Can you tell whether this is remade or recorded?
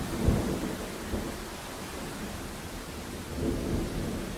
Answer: recorded